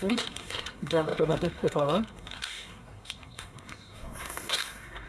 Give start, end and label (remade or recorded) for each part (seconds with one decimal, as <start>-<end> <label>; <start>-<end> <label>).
0.0-5.1 remade